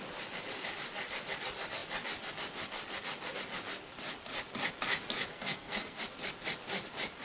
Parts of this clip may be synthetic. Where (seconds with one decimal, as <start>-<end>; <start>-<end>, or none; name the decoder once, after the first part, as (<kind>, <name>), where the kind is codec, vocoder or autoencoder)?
5.3-6.0 (codec, SNAC)